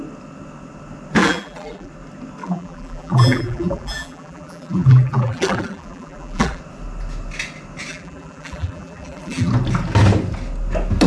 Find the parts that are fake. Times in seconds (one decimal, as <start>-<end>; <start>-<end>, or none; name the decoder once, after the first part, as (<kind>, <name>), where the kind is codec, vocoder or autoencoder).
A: 1.2-1.9 (vocoder, BigVGAN v2); 2.4-6.6; 7.9-9.5